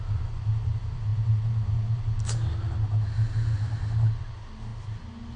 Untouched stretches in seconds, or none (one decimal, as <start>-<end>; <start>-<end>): 0.0-5.4